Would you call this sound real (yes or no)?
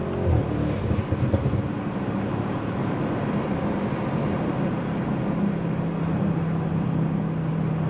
yes